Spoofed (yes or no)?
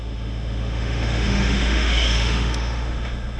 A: yes